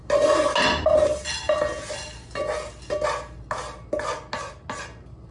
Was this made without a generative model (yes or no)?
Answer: yes